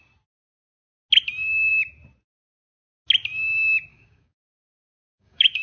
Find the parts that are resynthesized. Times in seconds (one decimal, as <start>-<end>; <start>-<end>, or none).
3.9-5.6